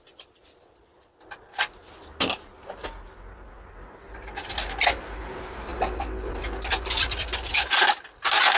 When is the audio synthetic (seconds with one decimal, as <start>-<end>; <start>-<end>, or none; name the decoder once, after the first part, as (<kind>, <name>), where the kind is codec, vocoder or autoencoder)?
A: none

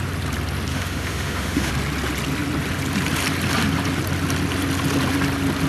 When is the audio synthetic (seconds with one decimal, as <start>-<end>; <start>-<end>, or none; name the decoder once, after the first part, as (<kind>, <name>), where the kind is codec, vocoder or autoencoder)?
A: 0.7-1.7 (autoencoder, DAC-VAE)

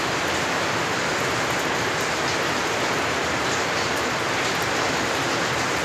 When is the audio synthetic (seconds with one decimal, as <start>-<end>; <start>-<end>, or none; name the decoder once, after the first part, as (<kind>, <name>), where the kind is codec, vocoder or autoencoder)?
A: none